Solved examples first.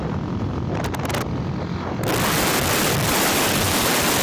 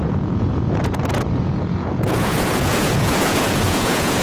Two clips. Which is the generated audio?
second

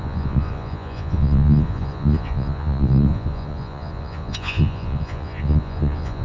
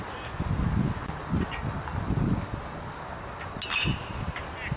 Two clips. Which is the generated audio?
first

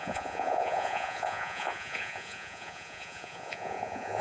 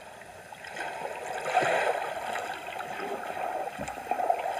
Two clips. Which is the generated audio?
first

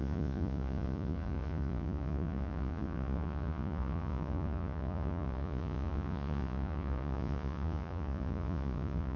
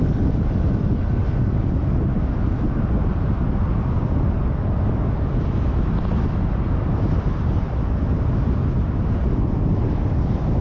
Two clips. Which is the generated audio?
first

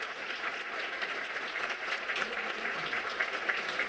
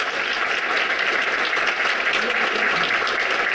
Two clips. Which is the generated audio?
first